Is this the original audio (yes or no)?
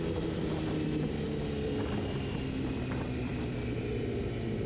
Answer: yes